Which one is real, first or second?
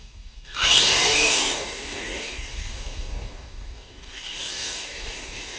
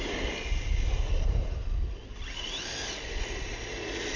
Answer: second